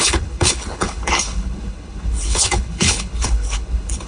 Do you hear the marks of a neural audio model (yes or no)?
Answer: yes